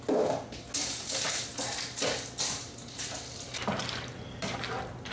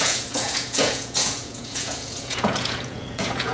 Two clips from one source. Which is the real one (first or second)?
first